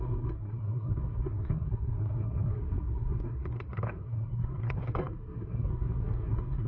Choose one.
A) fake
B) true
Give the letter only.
A